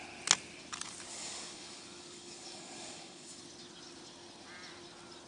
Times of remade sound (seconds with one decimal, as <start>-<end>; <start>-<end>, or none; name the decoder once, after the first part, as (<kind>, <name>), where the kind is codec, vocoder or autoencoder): 1.1-3.4 (codec, DAC)